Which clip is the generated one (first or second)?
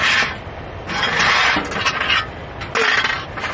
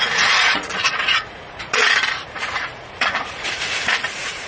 second